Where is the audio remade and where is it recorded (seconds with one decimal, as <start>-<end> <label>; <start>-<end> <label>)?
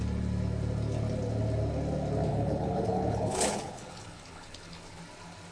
0.0-2.3 recorded; 2.3-5.0 remade; 5.0-5.5 recorded